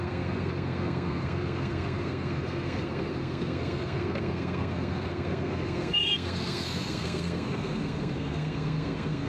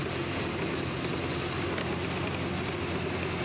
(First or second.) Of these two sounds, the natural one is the second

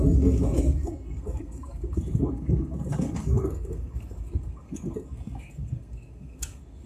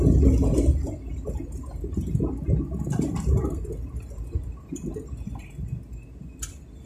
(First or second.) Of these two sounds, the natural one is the second